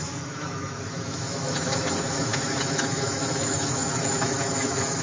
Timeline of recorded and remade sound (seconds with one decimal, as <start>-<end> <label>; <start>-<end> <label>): 0.0-5.0 remade